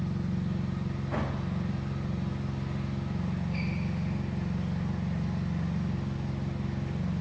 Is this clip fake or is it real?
real